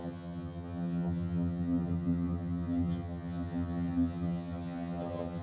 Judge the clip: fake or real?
fake